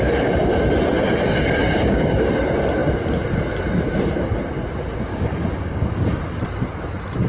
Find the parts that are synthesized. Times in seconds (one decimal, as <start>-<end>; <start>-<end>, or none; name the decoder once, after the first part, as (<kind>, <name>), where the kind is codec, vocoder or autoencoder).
1.6-2.3 (codec, DAC); 5.1-6.4